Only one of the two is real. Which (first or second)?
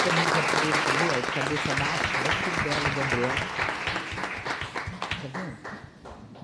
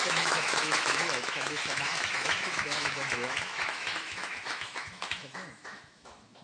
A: first